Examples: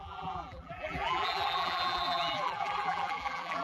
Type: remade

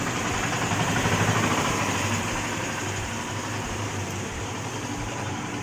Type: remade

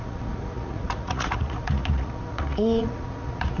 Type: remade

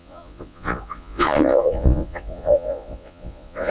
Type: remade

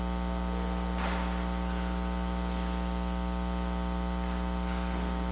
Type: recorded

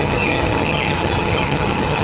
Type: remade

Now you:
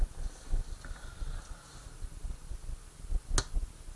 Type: recorded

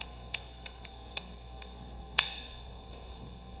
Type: remade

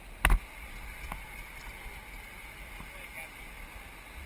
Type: recorded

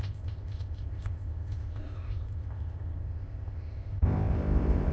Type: remade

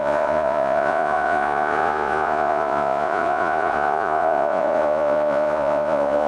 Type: remade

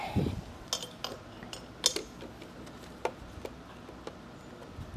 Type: recorded